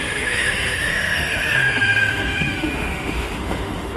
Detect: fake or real fake